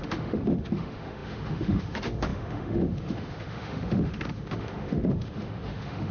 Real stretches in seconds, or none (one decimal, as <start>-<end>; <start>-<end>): none